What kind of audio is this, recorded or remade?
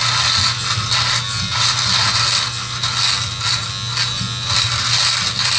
recorded